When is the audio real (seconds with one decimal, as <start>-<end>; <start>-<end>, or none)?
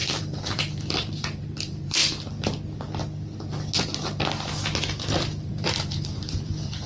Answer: 2.0-5.5